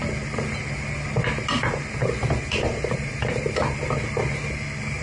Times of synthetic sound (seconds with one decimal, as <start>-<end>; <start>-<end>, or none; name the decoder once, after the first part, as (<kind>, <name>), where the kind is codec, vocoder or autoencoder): none